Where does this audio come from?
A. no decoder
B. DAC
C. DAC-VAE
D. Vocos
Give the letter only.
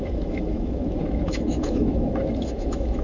C